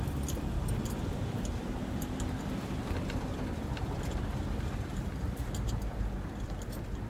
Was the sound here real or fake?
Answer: real